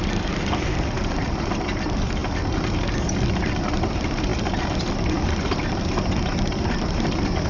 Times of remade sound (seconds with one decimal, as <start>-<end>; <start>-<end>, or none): none